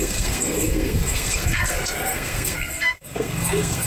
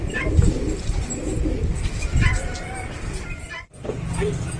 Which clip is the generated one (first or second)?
first